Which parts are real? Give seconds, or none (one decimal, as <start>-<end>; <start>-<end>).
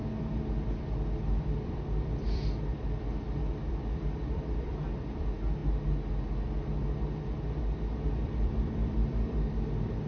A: 2.7-3.6; 5.6-8.2